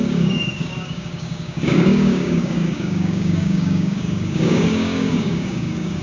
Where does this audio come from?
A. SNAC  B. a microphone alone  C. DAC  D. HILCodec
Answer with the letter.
C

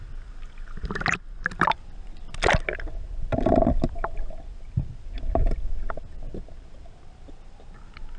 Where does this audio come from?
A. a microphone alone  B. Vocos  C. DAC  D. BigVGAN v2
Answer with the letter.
A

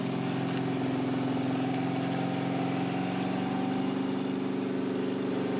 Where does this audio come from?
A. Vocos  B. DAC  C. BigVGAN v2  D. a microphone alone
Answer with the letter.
D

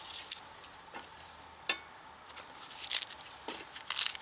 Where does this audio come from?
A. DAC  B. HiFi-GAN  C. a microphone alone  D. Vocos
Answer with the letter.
C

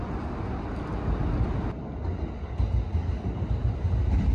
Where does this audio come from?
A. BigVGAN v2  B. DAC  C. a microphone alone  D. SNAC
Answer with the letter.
C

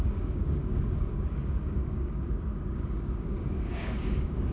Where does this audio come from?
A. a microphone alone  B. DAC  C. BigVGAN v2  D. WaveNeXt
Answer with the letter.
B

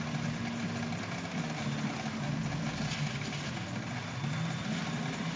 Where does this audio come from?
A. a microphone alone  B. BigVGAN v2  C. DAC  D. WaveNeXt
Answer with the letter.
A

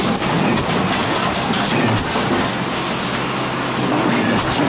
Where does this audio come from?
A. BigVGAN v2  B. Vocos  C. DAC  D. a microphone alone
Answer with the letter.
D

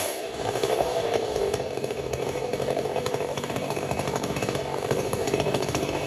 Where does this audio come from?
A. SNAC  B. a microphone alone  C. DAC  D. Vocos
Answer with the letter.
C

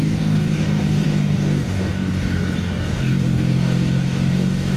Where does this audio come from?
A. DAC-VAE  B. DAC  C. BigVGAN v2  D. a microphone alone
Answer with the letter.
B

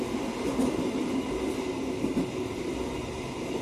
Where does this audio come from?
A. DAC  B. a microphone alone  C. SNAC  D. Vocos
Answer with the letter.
B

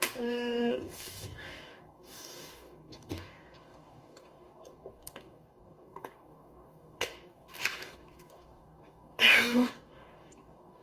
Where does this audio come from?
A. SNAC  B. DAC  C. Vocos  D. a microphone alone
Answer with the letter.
B